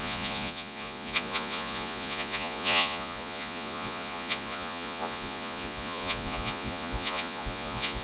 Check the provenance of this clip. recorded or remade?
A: remade